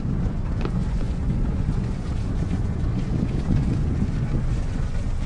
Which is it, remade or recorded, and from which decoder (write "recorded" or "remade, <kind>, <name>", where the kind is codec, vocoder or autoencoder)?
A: remade, vocoder, Vocos